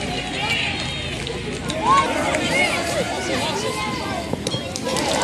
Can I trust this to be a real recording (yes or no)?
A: no